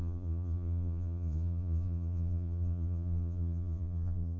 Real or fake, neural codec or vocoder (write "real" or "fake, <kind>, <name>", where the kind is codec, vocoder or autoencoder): fake, vocoder, Vocos